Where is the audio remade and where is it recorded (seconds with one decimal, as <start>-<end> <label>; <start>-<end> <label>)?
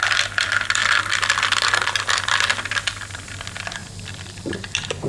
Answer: 0.0-3.8 recorded; 3.8-4.5 remade; 4.5-5.1 recorded